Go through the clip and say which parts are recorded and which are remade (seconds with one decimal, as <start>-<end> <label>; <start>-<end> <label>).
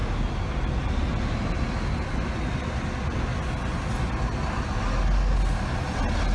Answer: 0.0-6.3 recorded